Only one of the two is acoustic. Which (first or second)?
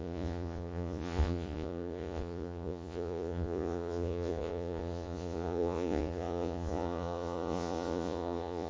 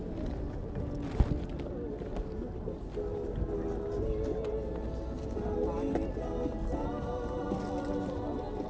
second